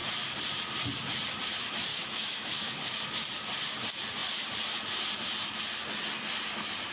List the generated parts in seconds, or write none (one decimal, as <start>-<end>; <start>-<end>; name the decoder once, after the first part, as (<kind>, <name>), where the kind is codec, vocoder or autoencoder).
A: 1.9-3.0 (autoencoder, DAC-VAE)